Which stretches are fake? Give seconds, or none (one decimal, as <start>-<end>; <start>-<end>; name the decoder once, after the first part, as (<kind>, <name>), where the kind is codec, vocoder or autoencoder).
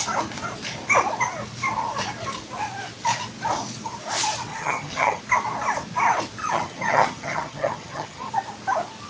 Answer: 4.5-5.2 (vocoder, HiFi-GAN); 6.4-8.3